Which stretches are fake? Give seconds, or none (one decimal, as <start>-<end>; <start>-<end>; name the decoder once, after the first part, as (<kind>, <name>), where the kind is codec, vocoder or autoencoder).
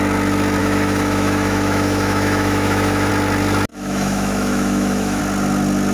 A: 0.6-3.1 (autoencoder, DAC-VAE); 3.7-5.2